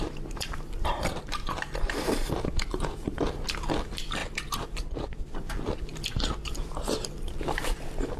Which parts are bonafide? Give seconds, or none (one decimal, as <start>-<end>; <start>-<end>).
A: none